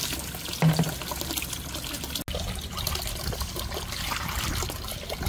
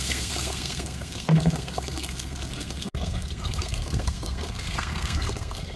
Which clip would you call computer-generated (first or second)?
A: second